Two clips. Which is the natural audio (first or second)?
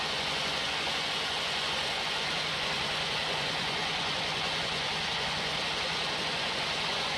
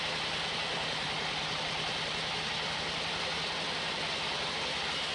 second